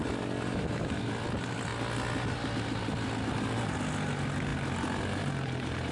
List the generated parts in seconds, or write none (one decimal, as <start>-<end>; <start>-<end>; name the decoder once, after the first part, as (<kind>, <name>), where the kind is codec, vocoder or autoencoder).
none